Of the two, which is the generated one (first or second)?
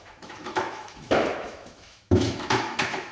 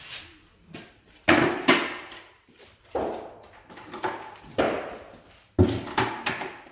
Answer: first